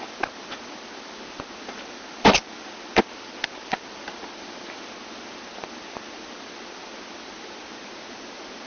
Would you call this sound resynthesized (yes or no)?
no